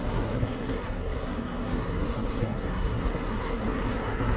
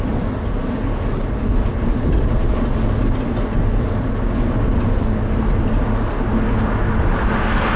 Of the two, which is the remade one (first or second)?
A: first